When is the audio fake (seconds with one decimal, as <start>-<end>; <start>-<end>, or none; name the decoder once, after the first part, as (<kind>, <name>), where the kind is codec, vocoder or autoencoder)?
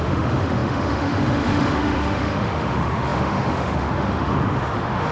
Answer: 0.0-5.1 (autoencoder, DAC-VAE)